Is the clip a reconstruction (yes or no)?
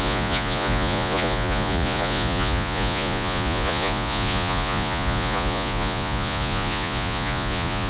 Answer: yes